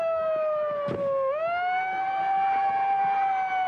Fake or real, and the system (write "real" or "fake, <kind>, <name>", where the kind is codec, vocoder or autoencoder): real